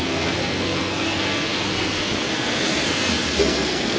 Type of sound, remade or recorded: remade